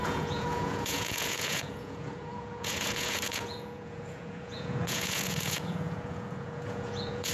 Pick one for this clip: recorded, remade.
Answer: remade